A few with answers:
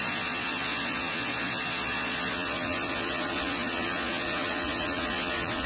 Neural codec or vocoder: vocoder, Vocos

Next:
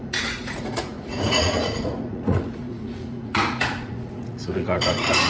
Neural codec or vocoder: vocoder, Vocos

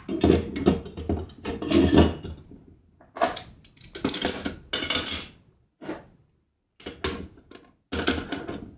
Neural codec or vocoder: none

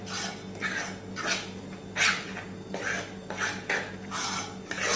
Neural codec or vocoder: none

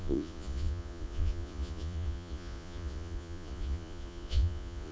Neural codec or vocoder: vocoder, Vocos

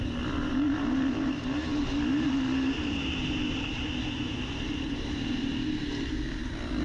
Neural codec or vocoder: none